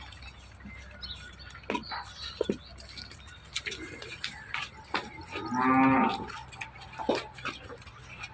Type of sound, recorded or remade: recorded